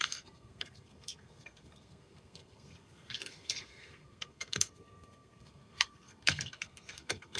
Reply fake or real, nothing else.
fake